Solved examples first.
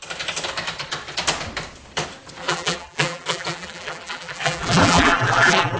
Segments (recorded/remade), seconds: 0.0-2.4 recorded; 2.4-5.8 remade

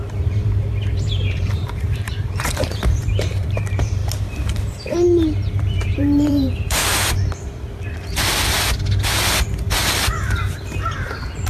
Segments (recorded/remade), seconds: 0.0-4.0 remade; 4.0-5.5 recorded; 5.5-6.8 remade; 6.8-9.6 recorded; 9.6-11.5 remade

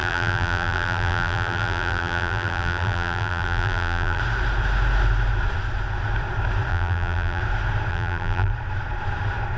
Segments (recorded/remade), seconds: 0.0-4.2 remade; 4.2-6.7 recorded; 6.7-7.4 remade; 7.4-7.9 recorded; 7.9-8.5 remade; 8.5-9.6 recorded

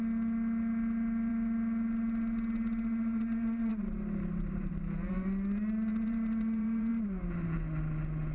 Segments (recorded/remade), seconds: 0.0-3.7 recorded; 3.7-4.7 remade; 4.7-5.9 recorded; 5.9-6.9 remade; 6.9-8.3 recorded